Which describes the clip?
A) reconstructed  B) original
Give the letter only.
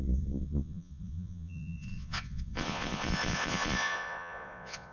A